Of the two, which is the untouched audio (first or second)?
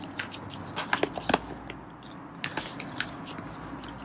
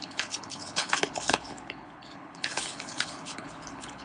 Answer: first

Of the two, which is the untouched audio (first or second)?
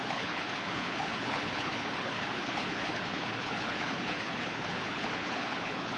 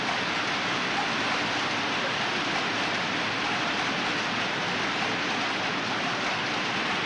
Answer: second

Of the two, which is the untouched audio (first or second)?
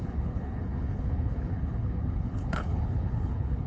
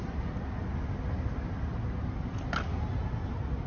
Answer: second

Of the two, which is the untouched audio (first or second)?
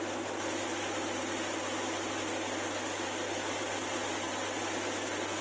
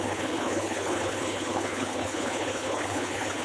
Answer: first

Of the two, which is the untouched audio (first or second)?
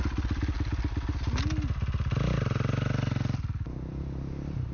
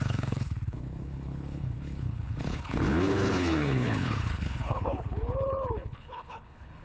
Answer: first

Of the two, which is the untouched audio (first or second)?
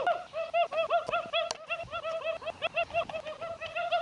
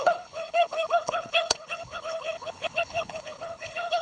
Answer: first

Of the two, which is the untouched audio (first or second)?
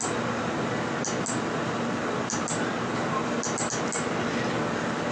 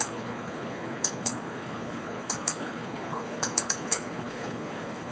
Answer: first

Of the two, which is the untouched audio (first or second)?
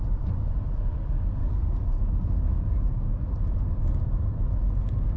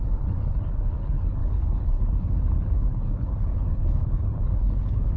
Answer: first